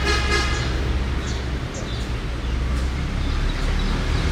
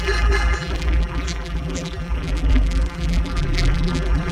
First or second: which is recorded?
first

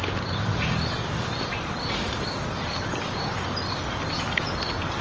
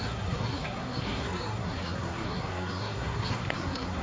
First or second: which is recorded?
first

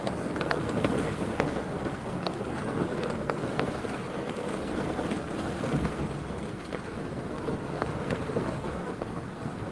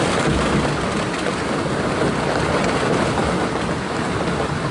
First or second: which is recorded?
second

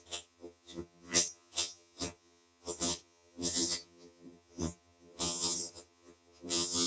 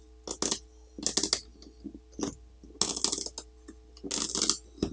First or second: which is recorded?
second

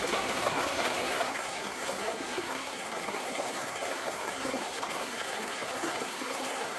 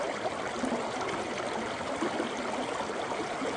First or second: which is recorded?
second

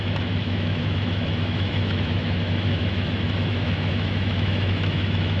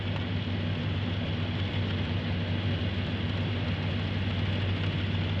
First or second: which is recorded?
second